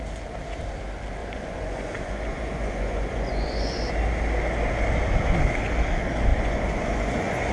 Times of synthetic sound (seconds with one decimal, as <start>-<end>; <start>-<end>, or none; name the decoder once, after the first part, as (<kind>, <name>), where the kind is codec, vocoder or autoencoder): 1.2-3.9 (vocoder, Vocos); 6.3-7.5